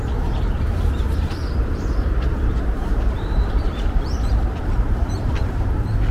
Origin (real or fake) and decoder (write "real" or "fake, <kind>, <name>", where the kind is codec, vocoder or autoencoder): fake, vocoder, BigVGAN v2